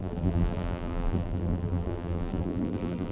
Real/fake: fake